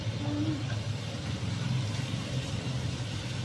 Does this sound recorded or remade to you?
recorded